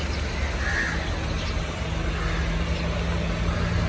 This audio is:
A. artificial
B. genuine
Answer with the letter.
B